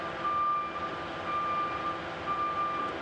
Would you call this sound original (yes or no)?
yes